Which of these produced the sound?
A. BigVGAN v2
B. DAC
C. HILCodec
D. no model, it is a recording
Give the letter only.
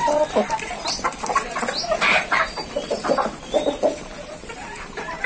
A